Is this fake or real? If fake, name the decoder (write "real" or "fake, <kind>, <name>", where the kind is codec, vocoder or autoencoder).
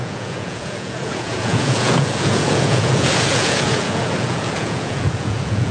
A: fake, vocoder, Vocos